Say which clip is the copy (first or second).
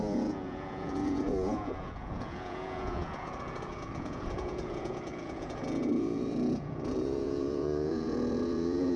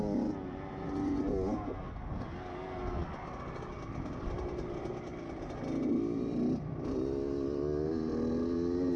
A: first